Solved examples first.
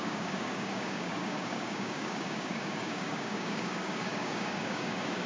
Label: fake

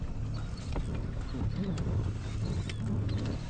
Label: real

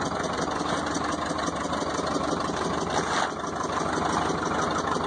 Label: real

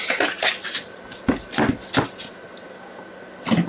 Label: real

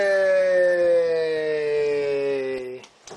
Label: real